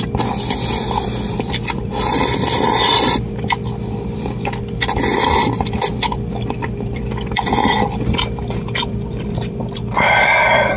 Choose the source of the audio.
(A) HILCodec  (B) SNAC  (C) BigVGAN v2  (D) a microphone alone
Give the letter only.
C